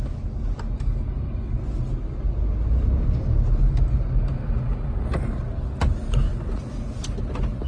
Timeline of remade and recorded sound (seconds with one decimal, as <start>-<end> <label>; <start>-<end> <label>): 0.0-7.7 recorded